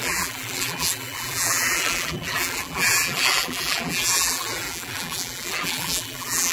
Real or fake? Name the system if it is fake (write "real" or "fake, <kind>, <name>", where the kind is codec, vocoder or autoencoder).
fake, vocoder, BigVGAN v2